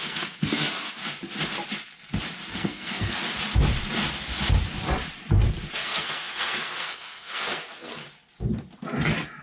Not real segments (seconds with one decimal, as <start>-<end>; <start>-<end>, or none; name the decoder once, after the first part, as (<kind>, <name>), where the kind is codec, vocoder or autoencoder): 0.0-1.0 (codec, SNAC); 2.5-3.2; 5.7-8.0